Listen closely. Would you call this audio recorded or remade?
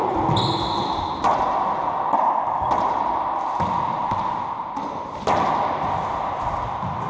recorded